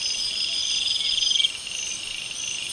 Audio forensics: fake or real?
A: real